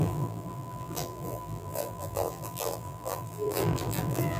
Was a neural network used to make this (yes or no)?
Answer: yes